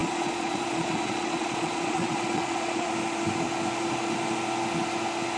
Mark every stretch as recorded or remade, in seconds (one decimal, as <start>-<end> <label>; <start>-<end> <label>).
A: 0.0-2.9 remade; 2.9-5.4 recorded